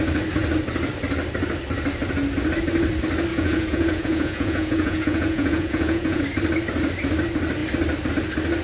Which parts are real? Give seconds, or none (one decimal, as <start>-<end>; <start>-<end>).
0.0-3.3; 6.2-8.6